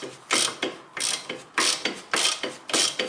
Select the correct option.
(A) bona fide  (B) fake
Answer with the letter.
A